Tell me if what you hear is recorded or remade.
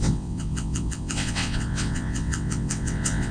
remade